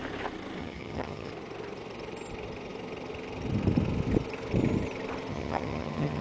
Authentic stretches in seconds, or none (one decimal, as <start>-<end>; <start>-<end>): 0.0-0.6; 1.3-5.3